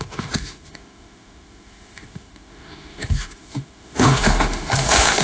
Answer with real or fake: fake